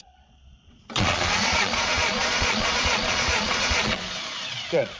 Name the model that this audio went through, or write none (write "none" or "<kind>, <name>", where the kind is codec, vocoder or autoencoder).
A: vocoder, Vocos